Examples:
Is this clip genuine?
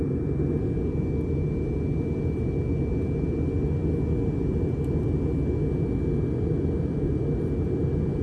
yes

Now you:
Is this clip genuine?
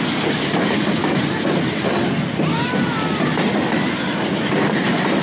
yes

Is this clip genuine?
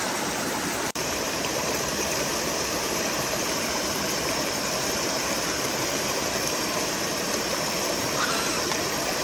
no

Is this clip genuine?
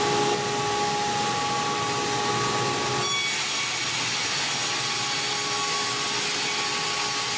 yes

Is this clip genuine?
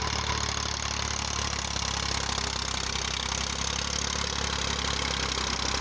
yes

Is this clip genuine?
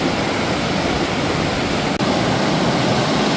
yes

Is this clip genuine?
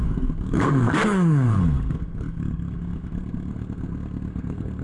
no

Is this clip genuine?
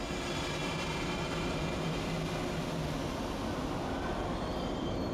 yes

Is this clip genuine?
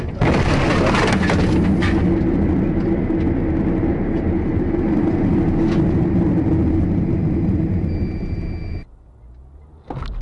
yes